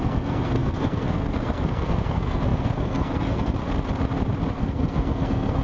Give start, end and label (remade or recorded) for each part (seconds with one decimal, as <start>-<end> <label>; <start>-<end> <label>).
0.0-3.6 remade; 3.6-4.5 recorded; 4.5-5.6 remade